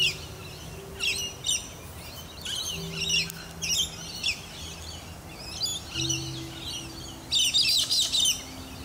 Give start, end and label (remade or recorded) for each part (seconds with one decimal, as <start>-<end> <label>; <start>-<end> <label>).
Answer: 0.0-8.8 recorded